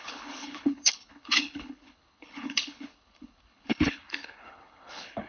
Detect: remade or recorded remade